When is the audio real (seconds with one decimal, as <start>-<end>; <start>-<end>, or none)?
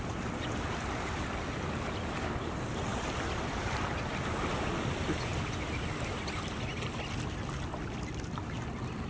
0.0-9.1